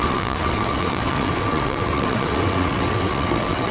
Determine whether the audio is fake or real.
fake